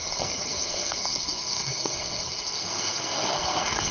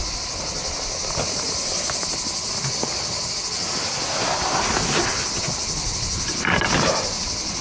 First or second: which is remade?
first